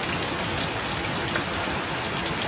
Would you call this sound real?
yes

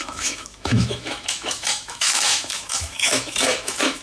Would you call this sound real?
no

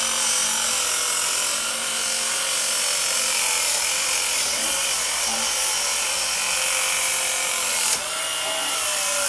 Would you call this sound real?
yes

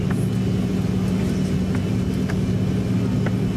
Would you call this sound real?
yes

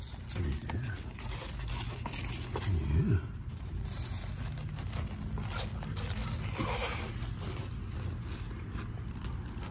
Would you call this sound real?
yes